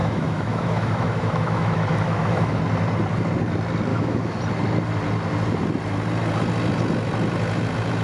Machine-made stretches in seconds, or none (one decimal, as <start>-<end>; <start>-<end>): 0.0-2.6; 3.9-4.4